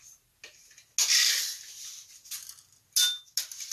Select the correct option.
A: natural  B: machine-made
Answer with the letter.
A